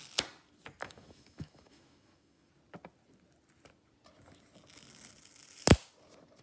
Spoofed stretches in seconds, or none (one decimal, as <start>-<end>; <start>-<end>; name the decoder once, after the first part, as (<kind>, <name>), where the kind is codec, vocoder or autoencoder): 0.8-2.5 (autoencoder, DAC-VAE)